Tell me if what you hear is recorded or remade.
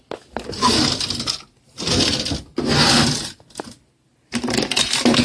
recorded